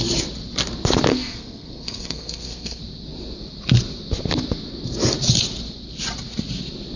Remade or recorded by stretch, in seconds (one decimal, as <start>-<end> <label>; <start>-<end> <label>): 0.0-1.1 recorded; 1.1-2.8 remade; 2.8-7.0 recorded